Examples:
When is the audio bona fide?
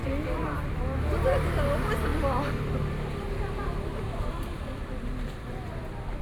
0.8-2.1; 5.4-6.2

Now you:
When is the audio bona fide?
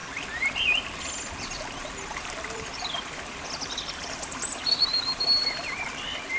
1.6-2.1; 5.9-6.4